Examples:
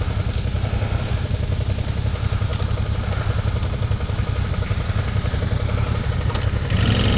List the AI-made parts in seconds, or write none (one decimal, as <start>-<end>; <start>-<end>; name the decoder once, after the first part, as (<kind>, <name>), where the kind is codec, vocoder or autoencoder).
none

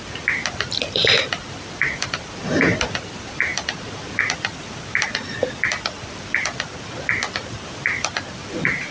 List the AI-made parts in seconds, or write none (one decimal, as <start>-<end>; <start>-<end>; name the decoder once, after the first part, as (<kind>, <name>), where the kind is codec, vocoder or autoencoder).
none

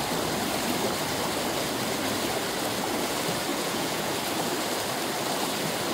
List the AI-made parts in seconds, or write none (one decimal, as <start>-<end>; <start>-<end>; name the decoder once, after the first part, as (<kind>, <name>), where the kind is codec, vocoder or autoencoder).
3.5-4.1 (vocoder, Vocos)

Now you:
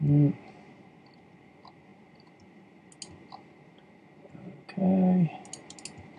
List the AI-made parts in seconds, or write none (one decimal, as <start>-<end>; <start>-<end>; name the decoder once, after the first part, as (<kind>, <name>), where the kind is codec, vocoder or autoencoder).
none

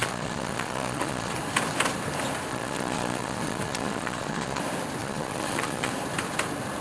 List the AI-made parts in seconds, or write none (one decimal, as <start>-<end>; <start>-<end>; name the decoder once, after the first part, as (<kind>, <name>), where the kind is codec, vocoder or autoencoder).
0.0-1.4 (vocoder, Vocos); 2.5-4.6; 5.0-5.9

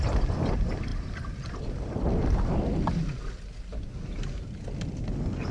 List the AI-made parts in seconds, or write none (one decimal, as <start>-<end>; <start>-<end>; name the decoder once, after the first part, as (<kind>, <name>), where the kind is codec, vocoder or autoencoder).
none

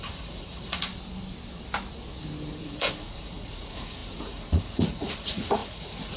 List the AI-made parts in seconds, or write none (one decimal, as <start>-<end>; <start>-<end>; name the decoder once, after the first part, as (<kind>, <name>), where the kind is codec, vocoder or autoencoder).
0.0-0.9 (vocoder, Vocos); 2.6-6.2

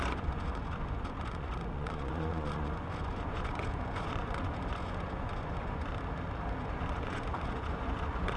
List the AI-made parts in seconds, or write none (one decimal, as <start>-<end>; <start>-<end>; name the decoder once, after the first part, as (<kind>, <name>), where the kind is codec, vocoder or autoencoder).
0.0-5.9 (vocoder, Vocos); 6.6-8.4